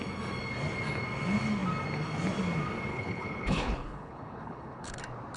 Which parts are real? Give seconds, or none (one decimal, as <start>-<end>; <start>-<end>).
0.0-2.9; 5.0-5.4